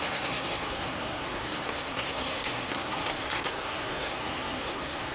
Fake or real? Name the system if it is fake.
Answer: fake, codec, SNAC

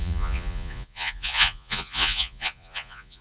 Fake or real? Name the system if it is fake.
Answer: fake, vocoder, Vocos